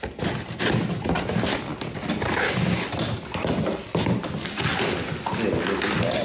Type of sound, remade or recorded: recorded